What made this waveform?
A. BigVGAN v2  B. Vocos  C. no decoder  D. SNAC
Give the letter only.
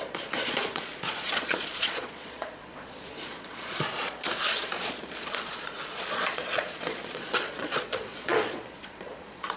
B